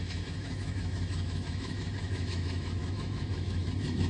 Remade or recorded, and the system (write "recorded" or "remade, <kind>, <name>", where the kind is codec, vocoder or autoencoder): remade, autoencoder, DAC-VAE